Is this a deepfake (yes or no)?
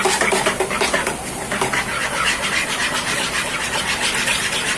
no